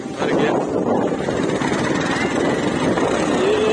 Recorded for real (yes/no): yes